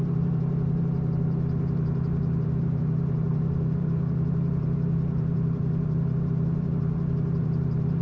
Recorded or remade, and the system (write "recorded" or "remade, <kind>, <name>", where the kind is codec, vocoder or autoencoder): remade, vocoder, BigVGAN v2